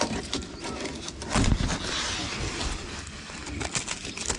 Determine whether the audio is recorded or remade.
recorded